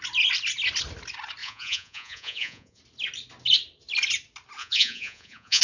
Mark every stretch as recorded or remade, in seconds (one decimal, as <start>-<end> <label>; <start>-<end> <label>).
0.0-1.4 recorded; 1.4-2.8 remade; 2.8-4.6 recorded; 4.6-5.6 remade